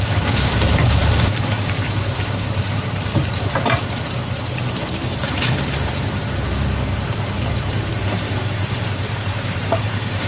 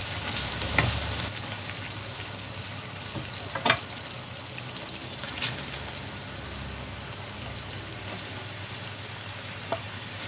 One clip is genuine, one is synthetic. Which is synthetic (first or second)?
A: first